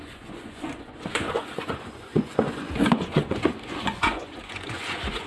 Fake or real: fake